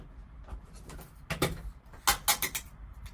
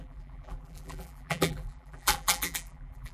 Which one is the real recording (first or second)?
first